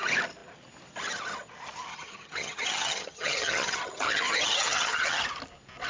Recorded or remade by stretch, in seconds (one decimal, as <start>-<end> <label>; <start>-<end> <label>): 0.0-1.9 recorded; 1.9-5.2 remade; 5.2-5.9 recorded